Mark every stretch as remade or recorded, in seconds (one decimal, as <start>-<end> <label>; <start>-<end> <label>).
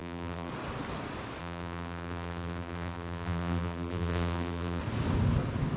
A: 0.0-0.5 remade; 0.5-1.4 recorded; 1.4-4.8 remade; 4.8-5.8 recorded